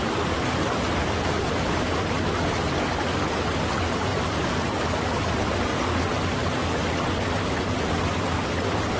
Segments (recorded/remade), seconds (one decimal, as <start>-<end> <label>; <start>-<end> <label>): 0.0-4.1 recorded; 4.1-5.1 remade; 5.1-9.0 recorded